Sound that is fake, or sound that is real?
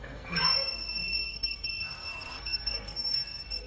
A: fake